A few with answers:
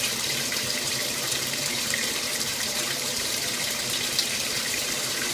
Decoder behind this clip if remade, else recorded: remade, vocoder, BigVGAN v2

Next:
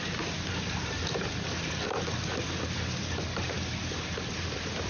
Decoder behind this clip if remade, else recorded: recorded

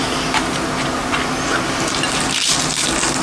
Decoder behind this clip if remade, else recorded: recorded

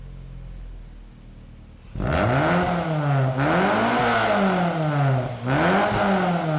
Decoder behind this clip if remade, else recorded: recorded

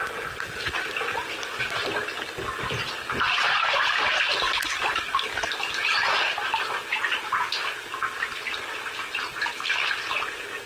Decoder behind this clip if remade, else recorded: recorded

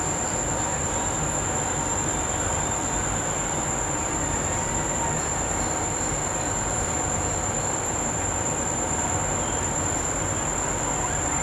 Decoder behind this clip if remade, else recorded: remade, vocoder, BigVGAN v2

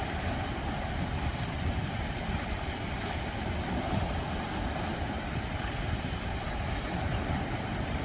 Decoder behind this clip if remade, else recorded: remade, vocoder, BigVGAN v2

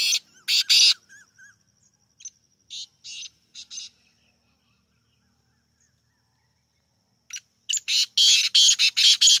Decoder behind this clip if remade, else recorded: recorded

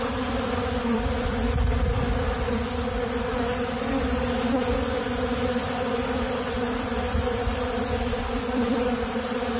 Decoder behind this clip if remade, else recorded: remade, vocoder, BigVGAN v2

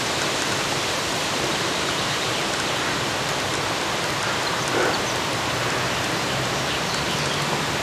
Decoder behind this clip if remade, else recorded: remade, vocoder, BigVGAN v2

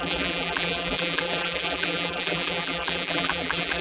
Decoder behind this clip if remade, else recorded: remade, vocoder, BigVGAN v2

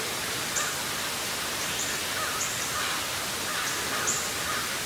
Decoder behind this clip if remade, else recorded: recorded